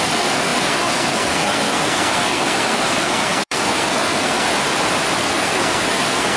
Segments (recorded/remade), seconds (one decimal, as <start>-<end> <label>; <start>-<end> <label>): 0.0-4.5 remade; 4.5-5.2 recorded; 5.2-6.4 remade